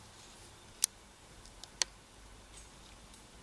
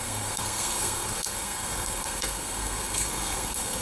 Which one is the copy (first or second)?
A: second